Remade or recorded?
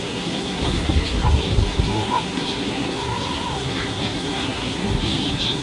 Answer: remade